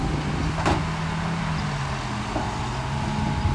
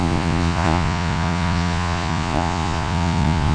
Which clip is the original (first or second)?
first